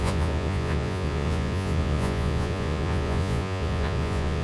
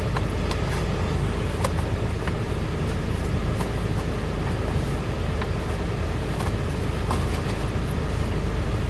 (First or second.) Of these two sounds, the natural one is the second